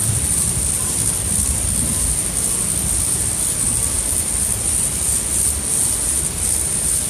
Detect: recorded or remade recorded